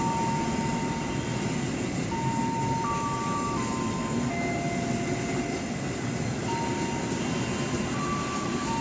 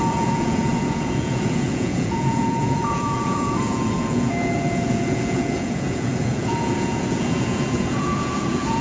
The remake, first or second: second